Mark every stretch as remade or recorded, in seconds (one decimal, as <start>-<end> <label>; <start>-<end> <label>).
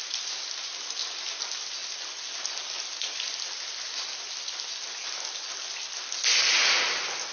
0.0-7.3 recorded